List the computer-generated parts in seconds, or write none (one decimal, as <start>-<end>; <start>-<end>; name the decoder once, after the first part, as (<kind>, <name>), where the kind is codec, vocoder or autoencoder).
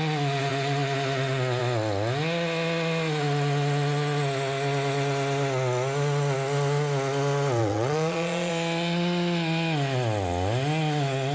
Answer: 7.6-8.5 (vocoder, Vocos)